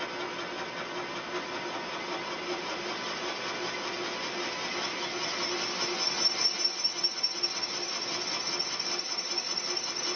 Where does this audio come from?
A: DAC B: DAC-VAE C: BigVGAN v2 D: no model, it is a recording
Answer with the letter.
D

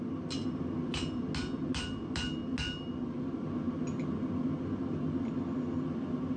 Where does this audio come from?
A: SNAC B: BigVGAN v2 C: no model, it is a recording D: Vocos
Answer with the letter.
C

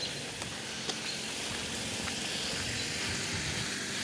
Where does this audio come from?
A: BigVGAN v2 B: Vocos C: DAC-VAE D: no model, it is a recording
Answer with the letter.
D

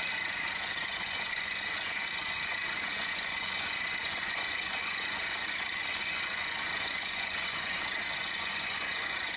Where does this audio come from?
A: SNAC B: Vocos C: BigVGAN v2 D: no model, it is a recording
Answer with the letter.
B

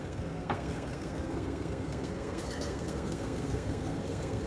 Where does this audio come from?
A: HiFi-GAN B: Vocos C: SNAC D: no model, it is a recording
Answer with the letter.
C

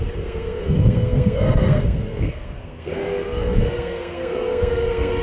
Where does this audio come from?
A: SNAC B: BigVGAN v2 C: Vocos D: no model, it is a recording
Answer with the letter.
A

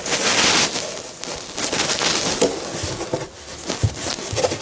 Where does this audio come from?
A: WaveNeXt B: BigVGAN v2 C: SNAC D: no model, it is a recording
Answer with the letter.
D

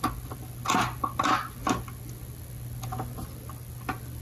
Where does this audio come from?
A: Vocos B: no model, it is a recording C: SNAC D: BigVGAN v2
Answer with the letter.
B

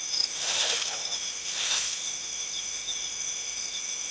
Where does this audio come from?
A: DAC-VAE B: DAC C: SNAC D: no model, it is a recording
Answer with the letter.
A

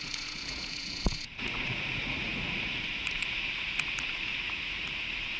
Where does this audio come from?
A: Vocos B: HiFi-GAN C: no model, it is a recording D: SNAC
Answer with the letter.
A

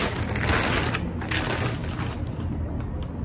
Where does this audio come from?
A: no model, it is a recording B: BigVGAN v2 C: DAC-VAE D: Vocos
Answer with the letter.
A